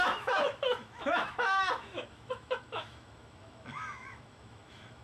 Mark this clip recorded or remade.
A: remade